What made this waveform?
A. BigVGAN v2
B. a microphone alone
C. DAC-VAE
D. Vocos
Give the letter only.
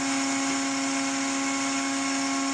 B